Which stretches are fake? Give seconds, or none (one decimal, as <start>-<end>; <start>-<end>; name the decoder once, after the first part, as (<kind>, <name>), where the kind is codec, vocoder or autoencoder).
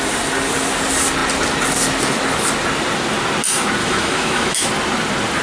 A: 3.8-4.6 (autoencoder, DAC-VAE)